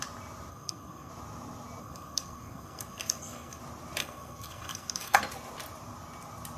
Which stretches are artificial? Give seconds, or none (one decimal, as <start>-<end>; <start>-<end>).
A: 0.5-1.1; 1.8-3.6; 4.0-5.2